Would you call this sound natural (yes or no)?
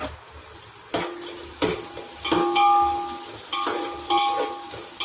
yes